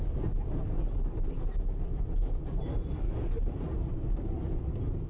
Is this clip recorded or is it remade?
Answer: recorded